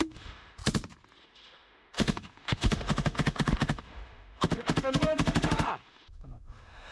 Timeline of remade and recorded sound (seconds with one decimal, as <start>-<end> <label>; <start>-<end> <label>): 0.0-0.6 remade; 0.6-1.2 recorded; 1.2-6.9 remade